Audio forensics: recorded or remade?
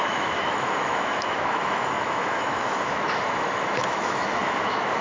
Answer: remade